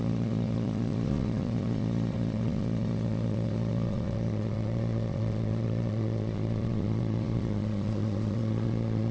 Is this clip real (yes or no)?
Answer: no